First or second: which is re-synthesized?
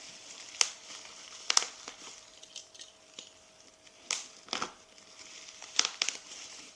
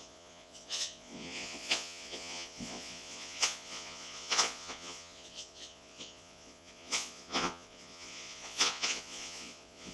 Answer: second